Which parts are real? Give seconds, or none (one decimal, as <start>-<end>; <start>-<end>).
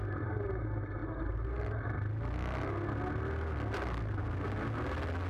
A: 0.0-5.3